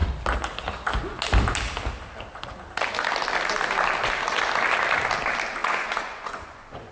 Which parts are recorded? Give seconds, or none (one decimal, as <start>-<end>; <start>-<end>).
0.0-5.6